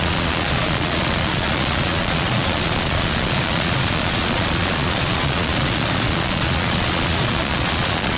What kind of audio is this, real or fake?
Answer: fake